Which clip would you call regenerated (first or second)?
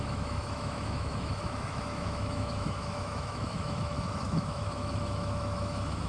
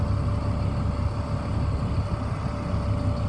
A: first